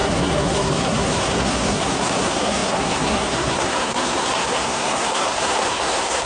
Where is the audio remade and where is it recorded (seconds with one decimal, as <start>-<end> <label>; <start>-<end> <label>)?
0.0-6.3 remade